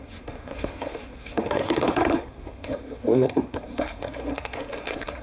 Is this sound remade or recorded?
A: remade